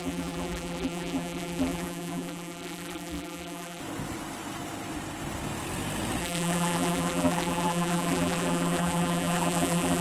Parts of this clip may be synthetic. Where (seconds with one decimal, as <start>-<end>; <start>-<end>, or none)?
0.0-3.8; 6.2-10.0